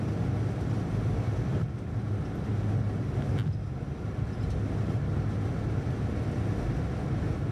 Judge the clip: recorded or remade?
recorded